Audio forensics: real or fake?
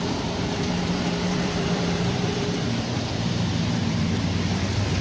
fake